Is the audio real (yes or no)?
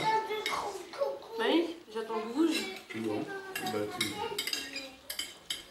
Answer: yes